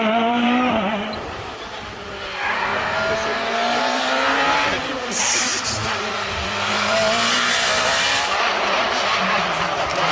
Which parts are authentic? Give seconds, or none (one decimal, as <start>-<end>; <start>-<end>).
2.7-3.8